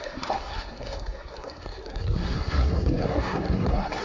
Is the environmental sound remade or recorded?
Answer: remade